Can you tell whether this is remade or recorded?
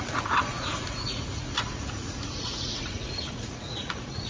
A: remade